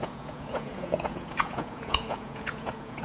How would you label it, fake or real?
fake